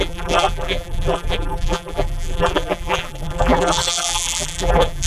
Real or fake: fake